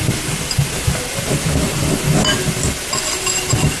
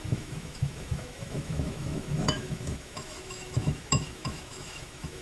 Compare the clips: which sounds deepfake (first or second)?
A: second